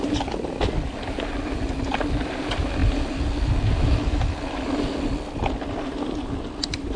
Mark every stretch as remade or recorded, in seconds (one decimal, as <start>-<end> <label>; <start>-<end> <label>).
0.0-7.0 recorded

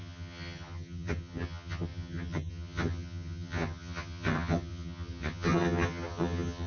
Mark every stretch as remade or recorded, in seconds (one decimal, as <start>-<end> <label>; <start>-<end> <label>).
0.0-6.7 remade

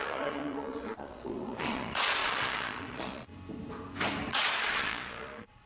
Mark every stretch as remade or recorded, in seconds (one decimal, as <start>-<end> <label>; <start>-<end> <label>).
0.0-3.3 remade; 3.3-4.3 recorded; 4.3-5.7 remade

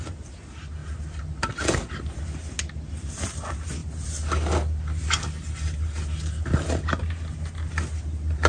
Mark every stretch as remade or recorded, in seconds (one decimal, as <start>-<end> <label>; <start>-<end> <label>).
0.0-8.5 recorded

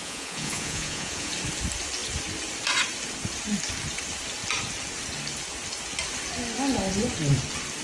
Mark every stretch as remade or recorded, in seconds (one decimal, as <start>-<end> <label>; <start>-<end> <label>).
0.0-1.3 remade; 1.3-7.8 recorded

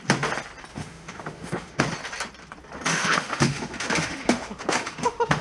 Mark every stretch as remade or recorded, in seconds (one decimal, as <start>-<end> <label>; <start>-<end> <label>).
0.0-0.7 recorded; 0.7-1.8 remade; 1.8-2.9 recorded; 2.9-5.4 remade

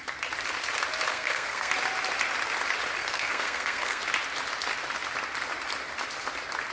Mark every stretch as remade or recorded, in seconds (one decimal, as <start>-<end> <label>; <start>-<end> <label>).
0.0-1.1 recorded; 1.1-1.7 remade; 1.7-3.0 recorded; 3.0-4.0 remade; 4.0-6.7 recorded